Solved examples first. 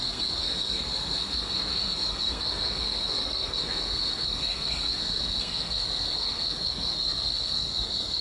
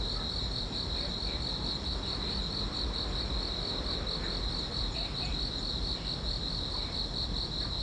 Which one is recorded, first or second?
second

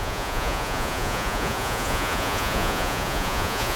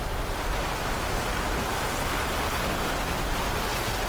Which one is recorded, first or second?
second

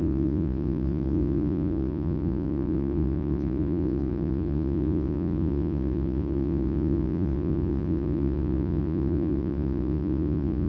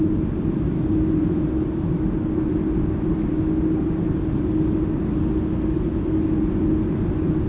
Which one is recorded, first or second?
second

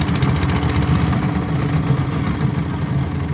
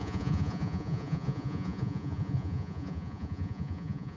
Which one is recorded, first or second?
first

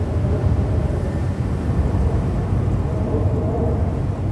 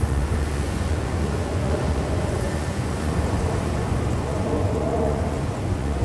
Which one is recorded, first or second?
first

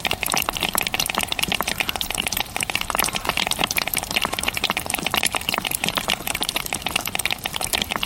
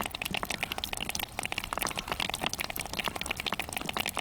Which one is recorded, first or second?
second